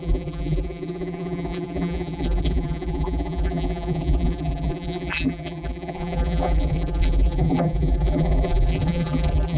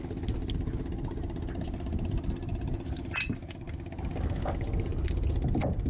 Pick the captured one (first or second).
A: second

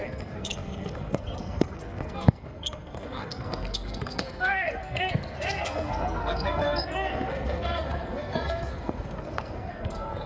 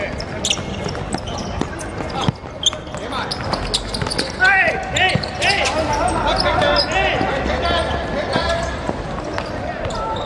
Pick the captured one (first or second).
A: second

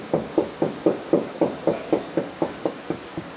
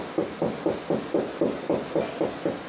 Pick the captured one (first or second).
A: second